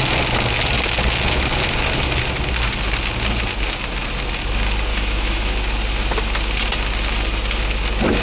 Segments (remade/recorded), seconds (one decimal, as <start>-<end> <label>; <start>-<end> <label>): 0.0-4.9 recorded; 4.9-5.6 remade; 5.6-8.2 recorded